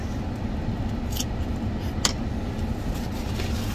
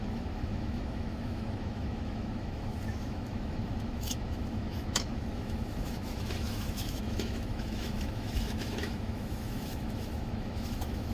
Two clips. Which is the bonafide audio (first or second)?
first